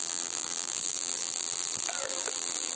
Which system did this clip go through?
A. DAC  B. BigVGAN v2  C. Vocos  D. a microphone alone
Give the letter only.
B